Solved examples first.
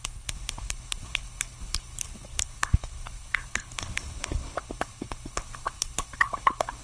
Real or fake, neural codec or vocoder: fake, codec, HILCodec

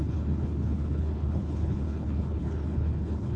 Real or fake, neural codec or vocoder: fake, codec, HILCodec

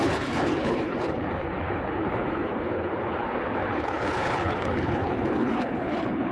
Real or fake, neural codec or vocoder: fake, codec, HILCodec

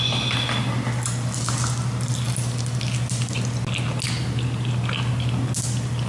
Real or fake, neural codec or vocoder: real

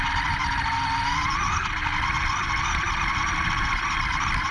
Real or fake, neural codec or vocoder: real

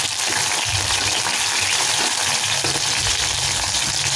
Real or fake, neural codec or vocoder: real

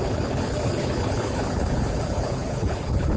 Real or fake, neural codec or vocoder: fake, codec, HILCodec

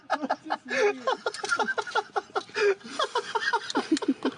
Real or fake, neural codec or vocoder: real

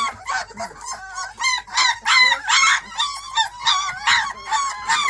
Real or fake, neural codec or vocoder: real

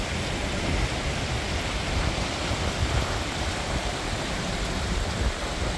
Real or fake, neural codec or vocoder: real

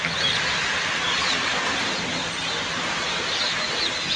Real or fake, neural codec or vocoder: real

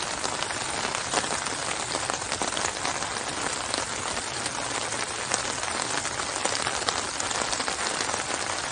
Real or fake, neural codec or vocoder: real